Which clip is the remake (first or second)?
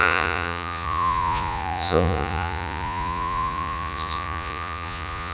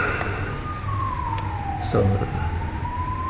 first